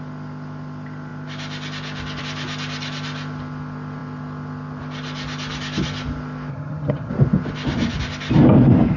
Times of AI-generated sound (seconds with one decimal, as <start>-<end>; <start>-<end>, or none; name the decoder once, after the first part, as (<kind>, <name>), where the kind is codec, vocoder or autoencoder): 6.5-7.1 (vocoder, HiFi-GAN)